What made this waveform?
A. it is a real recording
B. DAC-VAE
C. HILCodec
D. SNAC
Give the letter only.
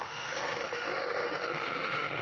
B